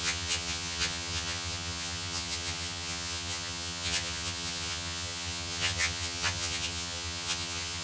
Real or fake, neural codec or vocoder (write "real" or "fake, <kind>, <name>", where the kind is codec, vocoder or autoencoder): fake, vocoder, HiFi-GAN